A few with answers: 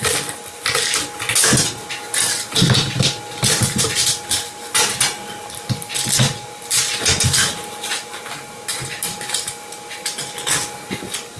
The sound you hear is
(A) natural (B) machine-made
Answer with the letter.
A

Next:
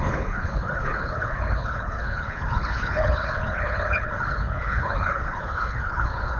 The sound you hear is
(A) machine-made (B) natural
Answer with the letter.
A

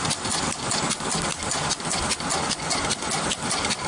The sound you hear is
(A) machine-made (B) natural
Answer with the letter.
B